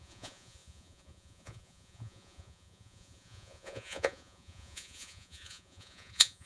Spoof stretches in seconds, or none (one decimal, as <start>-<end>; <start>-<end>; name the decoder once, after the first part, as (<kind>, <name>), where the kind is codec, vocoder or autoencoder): 0.0-6.5 (vocoder, Vocos)